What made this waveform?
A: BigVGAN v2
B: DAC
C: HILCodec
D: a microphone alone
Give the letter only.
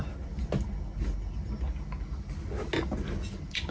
D